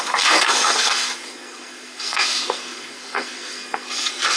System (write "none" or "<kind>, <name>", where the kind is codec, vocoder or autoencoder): codec, SNAC